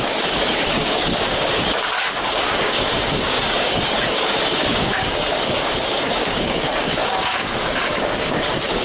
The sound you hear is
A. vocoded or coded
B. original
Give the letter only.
A